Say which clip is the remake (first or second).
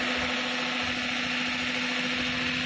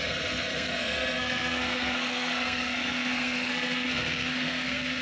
second